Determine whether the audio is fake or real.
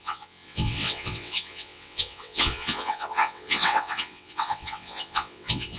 fake